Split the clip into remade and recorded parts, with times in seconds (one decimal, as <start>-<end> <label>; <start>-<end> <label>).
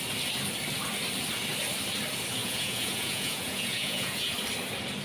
0.0-2.4 recorded; 2.4-4.3 remade; 4.3-5.0 recorded